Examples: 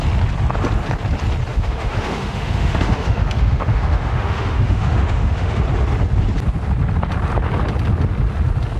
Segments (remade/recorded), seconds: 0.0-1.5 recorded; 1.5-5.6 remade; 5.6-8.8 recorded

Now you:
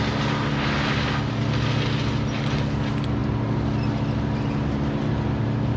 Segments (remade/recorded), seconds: 0.0-5.8 recorded

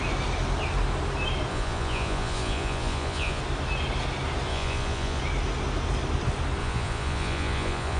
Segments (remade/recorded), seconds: 0.0-1.5 recorded; 1.5-3.4 remade; 3.4-4.5 recorded; 4.5-5.2 remade; 5.2-6.6 recorded; 6.6-8.0 remade

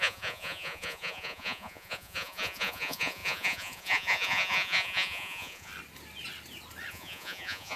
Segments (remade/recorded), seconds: 0.0-5.7 remade; 5.7-6.9 recorded; 6.9-7.8 remade

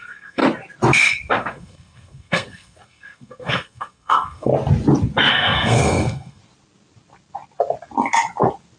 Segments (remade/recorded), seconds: 0.0-0.4 remade; 0.4-1.3 recorded; 1.3-4.5 remade; 4.5-5.3 recorded; 5.3-6.4 remade; 6.4-8.8 recorded

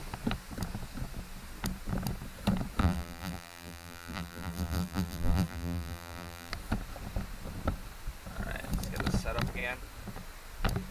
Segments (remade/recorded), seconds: 0.0-2.8 recorded; 2.8-6.5 remade; 6.5-10.9 recorded

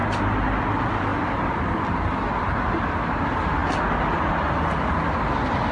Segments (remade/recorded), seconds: 0.0-5.7 recorded

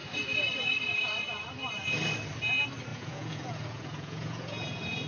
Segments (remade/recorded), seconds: 0.0-2.9 recorded; 2.9-5.1 remade